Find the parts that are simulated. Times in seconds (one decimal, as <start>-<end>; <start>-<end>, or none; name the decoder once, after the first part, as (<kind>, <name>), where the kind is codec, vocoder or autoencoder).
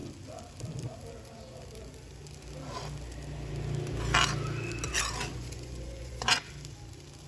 5.3-6.5 (vocoder, Vocos)